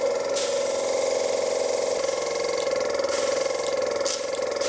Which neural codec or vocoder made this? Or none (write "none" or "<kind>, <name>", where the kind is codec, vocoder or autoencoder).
none